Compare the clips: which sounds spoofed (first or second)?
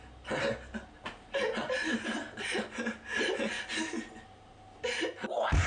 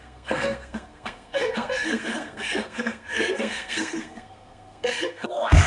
second